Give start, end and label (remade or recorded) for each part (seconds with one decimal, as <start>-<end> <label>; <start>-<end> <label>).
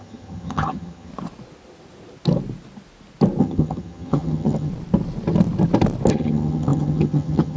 0.0-1.1 remade; 1.1-3.4 recorded; 3.4-4.7 remade; 4.7-6.1 recorded; 6.1-7.6 remade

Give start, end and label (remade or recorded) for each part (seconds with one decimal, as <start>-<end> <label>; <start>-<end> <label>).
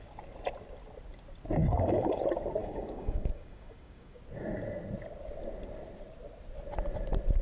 0.0-1.6 recorded; 1.6-2.2 remade; 2.2-2.6 recorded; 2.6-4.2 remade; 4.2-7.4 recorded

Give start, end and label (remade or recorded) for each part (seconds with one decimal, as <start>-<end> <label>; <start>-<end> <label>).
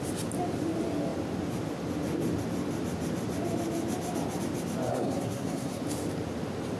0.0-4.9 recorded; 4.9-5.8 remade; 5.8-6.8 recorded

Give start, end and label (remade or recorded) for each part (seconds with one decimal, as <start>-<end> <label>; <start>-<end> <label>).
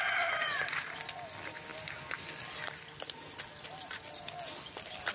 0.0-5.1 recorded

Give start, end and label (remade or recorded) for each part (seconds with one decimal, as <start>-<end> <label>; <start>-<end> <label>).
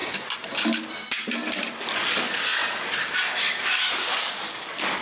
0.0-2.1 recorded; 2.1-2.6 remade; 2.6-3.5 recorded; 3.5-5.0 remade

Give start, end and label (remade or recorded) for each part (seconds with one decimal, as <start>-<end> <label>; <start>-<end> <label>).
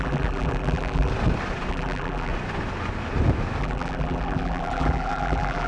0.0-1.1 remade; 1.1-1.7 recorded; 1.7-2.3 remade; 2.3-3.6 recorded; 3.6-5.7 remade